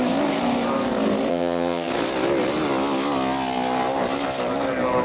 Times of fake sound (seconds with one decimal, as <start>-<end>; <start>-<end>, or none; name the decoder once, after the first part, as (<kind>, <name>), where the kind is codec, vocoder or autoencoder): 1.3-1.9 (vocoder, HiFi-GAN)

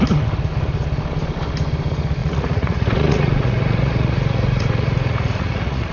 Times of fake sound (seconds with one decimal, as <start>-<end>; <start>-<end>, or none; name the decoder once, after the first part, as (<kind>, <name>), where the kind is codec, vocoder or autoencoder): 2.2-5.9 (vocoder, Vocos)

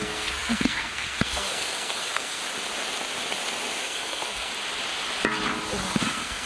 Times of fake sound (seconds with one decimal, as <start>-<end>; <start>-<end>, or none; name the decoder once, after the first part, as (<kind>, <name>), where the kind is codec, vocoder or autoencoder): 0.0-2.4 (codec, SNAC); 3.8-4.5; 6.0-6.5